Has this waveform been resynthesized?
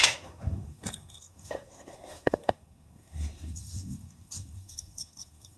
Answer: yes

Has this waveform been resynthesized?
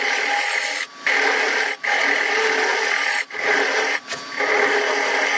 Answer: no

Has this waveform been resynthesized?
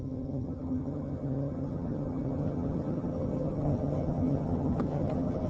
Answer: yes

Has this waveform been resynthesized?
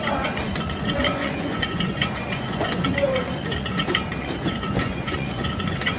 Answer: yes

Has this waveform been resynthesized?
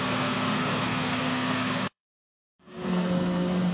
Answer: yes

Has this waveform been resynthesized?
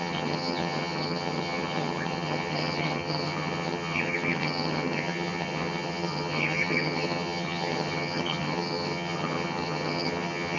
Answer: yes